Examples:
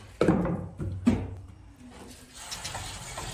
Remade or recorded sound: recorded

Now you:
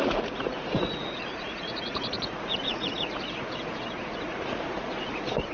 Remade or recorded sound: remade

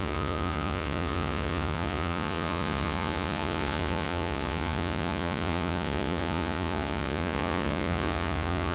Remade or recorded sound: remade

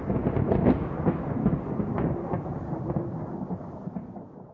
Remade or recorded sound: recorded